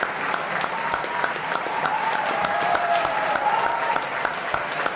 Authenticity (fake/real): real